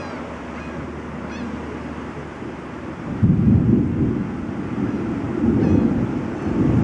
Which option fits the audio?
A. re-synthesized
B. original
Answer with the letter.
B